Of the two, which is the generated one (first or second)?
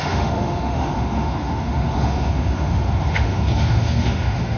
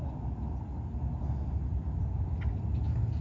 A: first